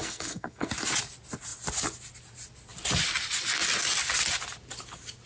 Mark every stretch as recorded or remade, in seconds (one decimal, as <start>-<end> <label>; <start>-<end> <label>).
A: 0.0-0.7 remade; 0.7-5.3 recorded